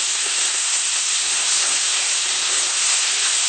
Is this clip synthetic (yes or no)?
yes